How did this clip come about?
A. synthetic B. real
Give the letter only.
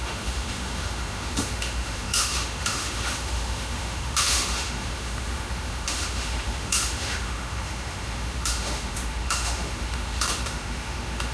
A